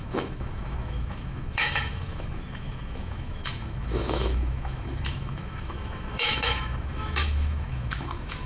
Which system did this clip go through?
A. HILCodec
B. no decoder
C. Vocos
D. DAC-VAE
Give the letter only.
D